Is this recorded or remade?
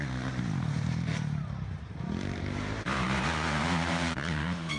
remade